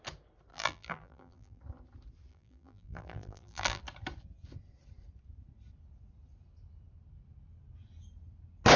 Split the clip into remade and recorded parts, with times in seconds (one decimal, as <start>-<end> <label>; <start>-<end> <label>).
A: 0.0-0.5 recorded; 0.5-1.6 remade; 1.6-2.3 recorded; 2.3-3.8 remade; 3.8-8.8 recorded